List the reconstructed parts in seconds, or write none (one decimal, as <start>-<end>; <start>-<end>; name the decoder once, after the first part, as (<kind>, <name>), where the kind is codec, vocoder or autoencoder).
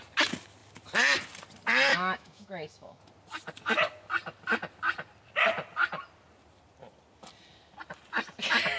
1.9-3.0 (autoencoder, DAC-VAE)